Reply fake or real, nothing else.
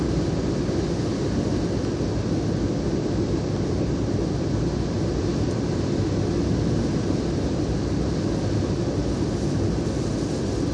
real